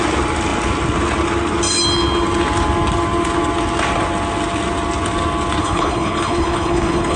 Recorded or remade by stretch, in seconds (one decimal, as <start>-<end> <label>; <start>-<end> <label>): 0.0-5.6 recorded; 5.6-7.2 remade

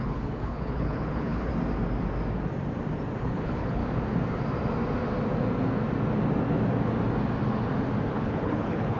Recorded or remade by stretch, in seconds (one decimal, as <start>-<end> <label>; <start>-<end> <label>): 0.0-1.5 remade; 1.5-3.2 recorded; 3.2-3.8 remade; 3.8-8.1 recorded; 8.1-9.0 remade